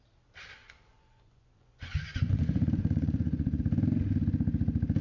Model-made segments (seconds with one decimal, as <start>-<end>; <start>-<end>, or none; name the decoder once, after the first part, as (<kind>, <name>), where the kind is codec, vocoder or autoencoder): 0.6-3.6 (vocoder, Vocos)